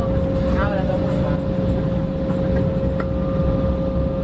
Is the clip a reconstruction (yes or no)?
no